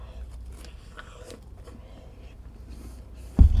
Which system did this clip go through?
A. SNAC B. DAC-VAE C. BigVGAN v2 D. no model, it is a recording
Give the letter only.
D